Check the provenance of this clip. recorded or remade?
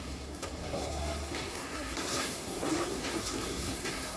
remade